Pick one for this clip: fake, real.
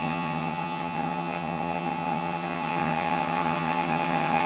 fake